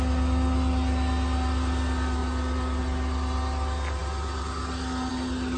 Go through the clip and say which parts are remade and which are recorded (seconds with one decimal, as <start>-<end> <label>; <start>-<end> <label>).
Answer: 0.0-5.6 recorded